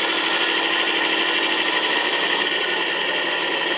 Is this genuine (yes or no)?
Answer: yes